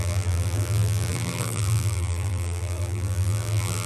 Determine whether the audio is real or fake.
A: fake